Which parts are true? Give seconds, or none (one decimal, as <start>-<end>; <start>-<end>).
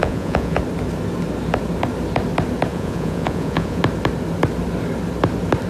0.6-2.7; 3.8-5.7